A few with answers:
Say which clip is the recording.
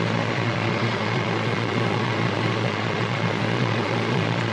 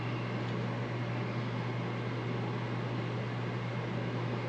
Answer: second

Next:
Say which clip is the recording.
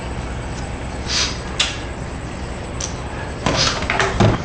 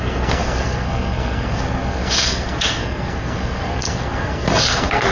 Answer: first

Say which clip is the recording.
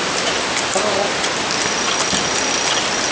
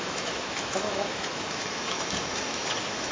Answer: first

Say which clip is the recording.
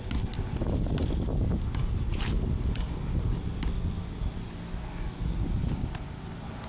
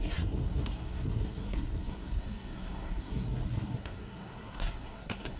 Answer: first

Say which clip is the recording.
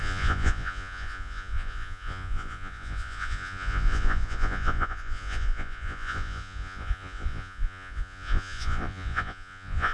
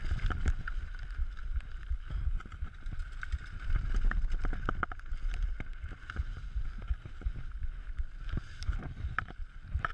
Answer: second